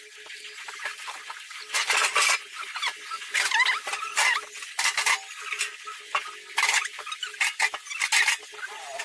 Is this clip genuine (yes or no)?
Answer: yes